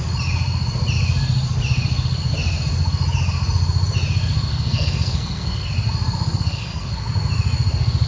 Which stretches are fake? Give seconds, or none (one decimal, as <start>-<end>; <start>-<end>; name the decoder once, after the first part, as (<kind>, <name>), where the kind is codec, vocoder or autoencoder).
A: 4.5-5.7 (codec, SNAC); 6.3-6.9